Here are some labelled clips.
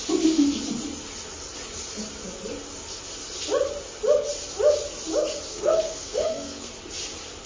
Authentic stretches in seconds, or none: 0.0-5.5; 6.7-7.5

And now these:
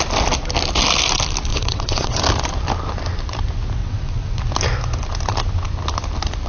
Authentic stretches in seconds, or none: 0.0-1.5; 2.2-3.8; 4.4-6.5

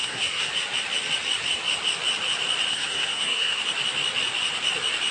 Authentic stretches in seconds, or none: 0.5-2.7; 3.6-5.1

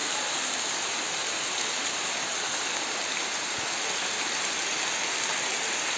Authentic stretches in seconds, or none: 0.6-1.2; 1.8-6.0